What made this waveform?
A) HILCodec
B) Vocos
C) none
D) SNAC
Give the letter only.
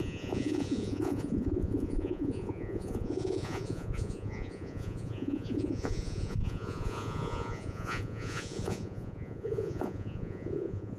B